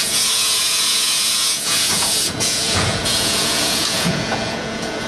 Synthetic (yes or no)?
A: yes